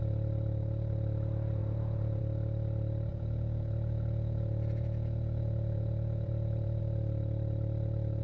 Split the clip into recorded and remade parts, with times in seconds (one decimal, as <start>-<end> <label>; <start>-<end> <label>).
0.0-1.6 recorded; 1.6-2.2 remade; 2.2-3.1 recorded; 3.1-6.8 remade; 6.8-8.2 recorded